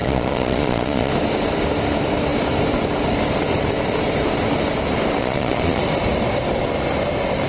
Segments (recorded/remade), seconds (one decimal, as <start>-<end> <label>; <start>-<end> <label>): 0.0-1.1 remade; 1.1-5.2 recorded; 5.2-5.8 remade; 5.8-7.5 recorded